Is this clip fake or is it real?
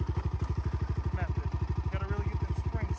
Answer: real